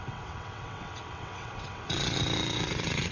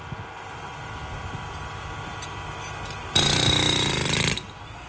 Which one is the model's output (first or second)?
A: first